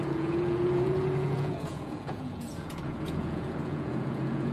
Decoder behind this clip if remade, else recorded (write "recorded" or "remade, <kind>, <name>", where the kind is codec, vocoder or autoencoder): remade, vocoder, Vocos